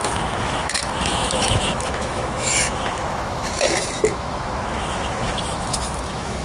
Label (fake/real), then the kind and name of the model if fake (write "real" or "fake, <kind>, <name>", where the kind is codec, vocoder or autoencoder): fake, autoencoder, DAC-VAE